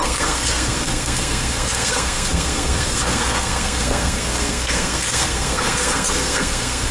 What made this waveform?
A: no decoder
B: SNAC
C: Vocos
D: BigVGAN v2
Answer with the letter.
B